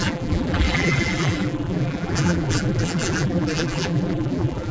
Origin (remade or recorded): remade